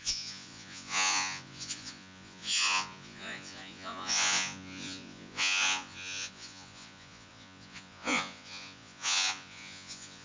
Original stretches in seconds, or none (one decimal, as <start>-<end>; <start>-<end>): none